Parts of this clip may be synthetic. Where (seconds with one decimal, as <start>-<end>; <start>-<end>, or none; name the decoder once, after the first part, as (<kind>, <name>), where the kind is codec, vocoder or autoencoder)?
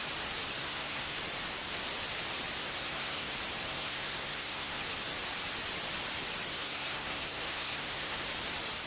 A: 0.6-1.2 (codec, SNAC); 2.6-3.3; 3.7-4.8; 6.5-8.3